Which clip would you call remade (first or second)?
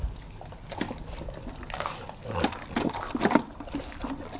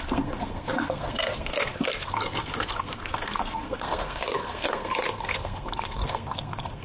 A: second